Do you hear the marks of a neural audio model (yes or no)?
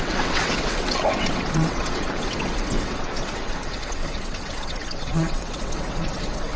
yes